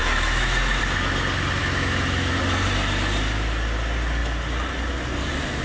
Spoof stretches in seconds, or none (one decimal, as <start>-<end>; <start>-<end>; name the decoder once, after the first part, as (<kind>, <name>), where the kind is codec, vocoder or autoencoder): 0.0-0.8 (autoencoder, DAC-VAE); 1.6-2.4